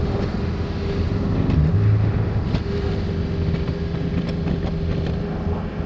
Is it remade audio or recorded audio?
recorded